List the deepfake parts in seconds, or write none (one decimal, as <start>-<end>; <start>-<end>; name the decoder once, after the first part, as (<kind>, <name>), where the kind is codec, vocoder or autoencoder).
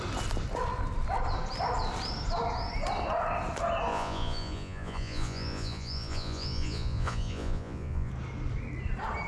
3.9-8.1 (vocoder, Vocos)